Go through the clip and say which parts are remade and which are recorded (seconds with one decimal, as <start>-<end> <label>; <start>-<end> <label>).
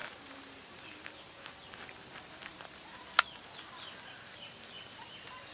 0.0-1.7 remade; 1.7-2.5 recorded; 2.5-3.0 remade; 3.0-5.5 recorded